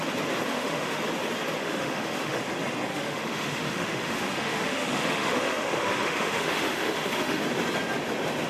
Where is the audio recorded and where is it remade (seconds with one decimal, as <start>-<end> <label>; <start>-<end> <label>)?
0.0-0.5 recorded; 0.5-1.0 remade; 1.0-1.6 recorded; 1.6-2.4 remade; 2.4-2.9 recorded; 2.9-7.4 remade; 7.4-8.5 recorded